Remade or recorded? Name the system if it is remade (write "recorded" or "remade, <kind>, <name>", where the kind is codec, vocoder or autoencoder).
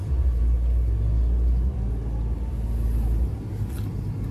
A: recorded